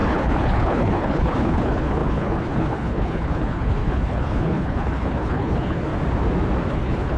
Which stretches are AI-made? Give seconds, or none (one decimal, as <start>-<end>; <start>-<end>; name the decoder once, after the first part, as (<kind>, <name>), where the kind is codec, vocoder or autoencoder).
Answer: 0.0-5.9 (codec, HILCodec); 6.7-7.2